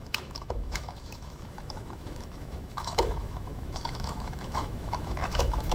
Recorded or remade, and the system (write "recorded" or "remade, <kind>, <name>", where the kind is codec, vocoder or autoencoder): remade, autoencoder, DAC-VAE